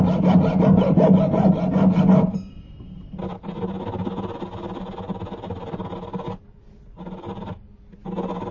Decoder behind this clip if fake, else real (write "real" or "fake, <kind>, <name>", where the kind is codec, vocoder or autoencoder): real